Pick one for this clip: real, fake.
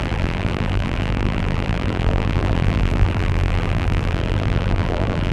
fake